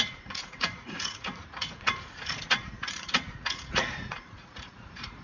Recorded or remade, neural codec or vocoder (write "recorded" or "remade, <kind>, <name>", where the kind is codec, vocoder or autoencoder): remade, vocoder, Vocos